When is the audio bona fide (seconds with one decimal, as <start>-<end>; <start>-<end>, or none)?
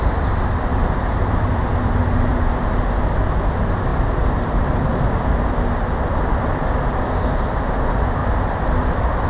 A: 2.3-3.4; 8.2-8.8